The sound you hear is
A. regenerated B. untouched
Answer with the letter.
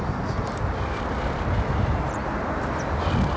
B